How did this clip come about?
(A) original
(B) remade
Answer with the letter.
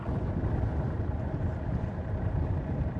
A